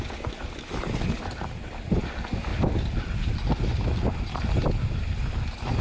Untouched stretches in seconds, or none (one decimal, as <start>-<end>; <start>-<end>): 0.0-5.8